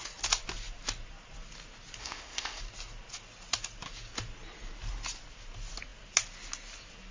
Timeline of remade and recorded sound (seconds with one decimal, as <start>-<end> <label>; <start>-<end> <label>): 0.0-2.0 recorded; 2.0-2.6 remade; 2.6-7.1 recorded